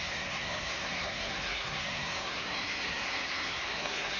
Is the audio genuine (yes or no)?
no